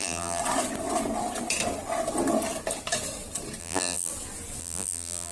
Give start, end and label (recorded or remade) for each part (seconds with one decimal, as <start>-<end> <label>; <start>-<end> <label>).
0.0-0.4 remade; 0.4-3.6 recorded; 3.6-4.1 remade; 4.1-4.6 recorded; 4.6-5.3 remade